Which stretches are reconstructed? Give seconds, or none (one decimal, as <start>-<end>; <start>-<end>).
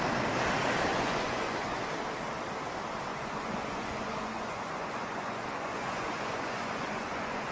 0.9-1.8; 3.1-7.5